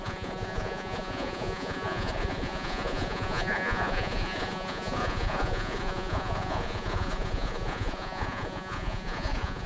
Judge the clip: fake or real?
fake